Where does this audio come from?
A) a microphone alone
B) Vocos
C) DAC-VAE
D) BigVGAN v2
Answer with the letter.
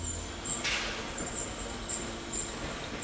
A